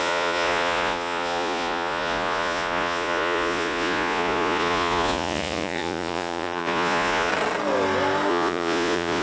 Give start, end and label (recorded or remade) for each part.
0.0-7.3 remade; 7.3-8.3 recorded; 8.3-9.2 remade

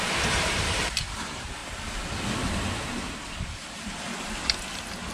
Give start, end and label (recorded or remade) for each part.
0.0-1.6 remade; 1.6-4.2 recorded; 4.2-5.1 remade

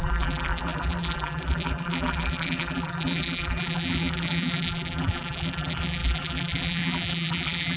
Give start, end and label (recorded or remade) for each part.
0.0-7.8 remade

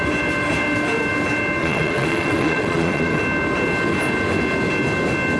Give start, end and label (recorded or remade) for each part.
0.0-1.6 recorded; 1.6-3.2 remade; 3.2-5.4 recorded

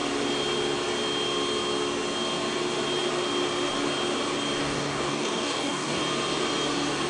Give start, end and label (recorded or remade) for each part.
0.0-4.6 recorded; 4.6-6.0 remade; 6.0-7.1 recorded